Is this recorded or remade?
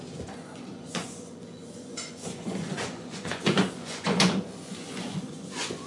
remade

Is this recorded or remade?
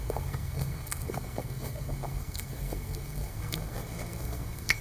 remade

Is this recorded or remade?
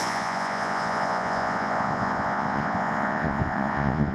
remade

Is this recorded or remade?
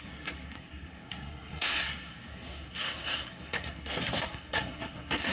remade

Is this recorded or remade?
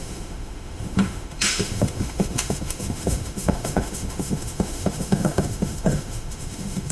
remade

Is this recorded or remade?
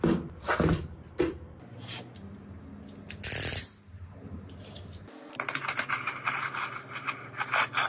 recorded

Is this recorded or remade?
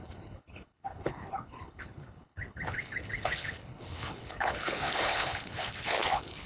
remade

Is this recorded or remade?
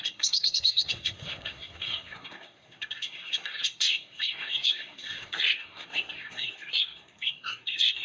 remade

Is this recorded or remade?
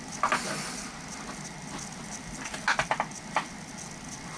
recorded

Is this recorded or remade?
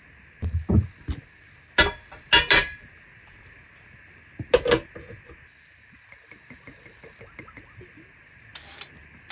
recorded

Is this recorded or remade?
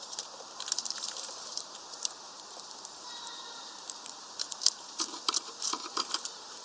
remade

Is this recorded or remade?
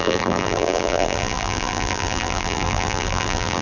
remade